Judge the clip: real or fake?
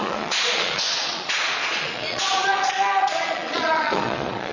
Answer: fake